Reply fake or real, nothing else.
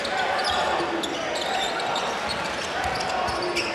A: real